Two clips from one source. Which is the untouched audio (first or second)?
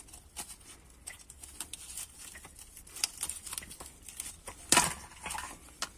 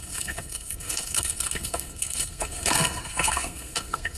first